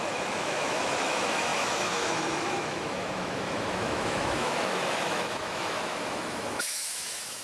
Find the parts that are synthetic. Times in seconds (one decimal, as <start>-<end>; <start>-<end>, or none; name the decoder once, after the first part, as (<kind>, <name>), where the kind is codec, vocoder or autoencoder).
0.0-7.4 (autoencoder, DAC-VAE)